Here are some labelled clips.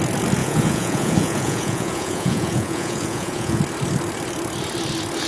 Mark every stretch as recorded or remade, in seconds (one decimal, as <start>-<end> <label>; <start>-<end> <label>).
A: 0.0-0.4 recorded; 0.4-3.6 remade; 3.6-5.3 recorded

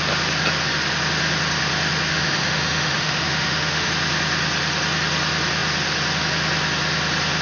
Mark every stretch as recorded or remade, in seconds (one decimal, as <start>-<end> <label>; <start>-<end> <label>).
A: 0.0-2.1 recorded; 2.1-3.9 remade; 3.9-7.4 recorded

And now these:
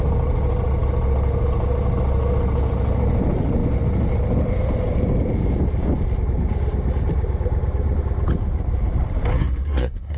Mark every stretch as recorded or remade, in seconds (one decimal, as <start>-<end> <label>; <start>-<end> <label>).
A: 0.0-9.3 recorded; 9.3-10.2 remade